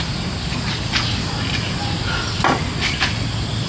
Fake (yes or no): no